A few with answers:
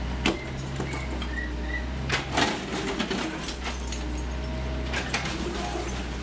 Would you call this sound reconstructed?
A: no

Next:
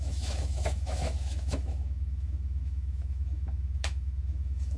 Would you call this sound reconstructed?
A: yes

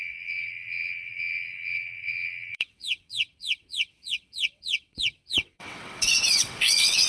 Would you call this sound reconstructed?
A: yes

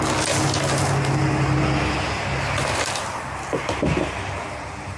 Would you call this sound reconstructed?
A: no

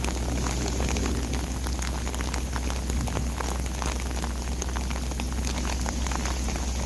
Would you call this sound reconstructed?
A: no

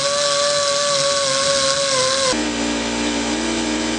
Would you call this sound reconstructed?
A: no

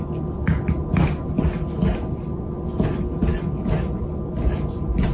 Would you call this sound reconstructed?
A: no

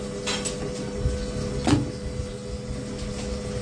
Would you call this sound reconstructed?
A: no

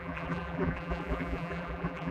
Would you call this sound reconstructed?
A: yes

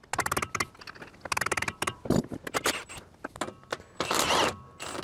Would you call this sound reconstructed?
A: no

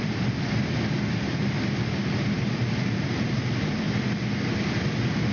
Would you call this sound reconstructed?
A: no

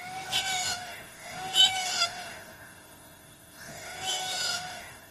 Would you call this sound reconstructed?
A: yes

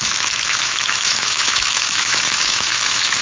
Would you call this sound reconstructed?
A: yes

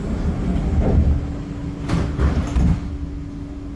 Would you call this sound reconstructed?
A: no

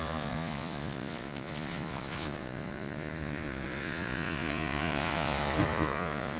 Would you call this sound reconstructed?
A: yes